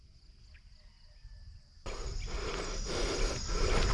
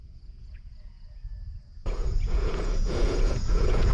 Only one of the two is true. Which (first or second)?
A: first